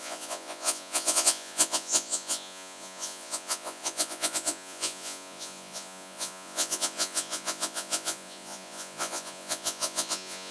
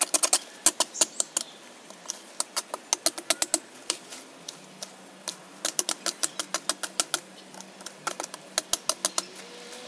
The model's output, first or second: first